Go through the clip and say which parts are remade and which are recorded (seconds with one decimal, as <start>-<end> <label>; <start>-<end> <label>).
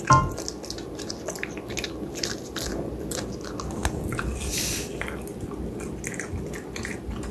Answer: 0.0-7.3 recorded